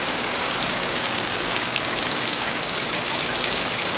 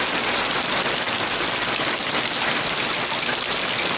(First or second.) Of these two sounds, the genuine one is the second